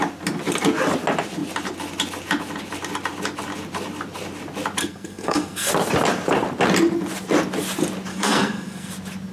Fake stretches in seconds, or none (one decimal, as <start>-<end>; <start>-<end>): 4.8-5.7; 8.1-8.9